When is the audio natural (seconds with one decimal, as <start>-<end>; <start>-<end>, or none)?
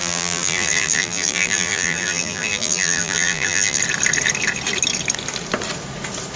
3.8-6.4